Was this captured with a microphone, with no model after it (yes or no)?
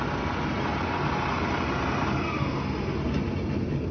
yes